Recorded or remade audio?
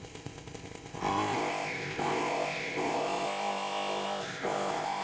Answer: remade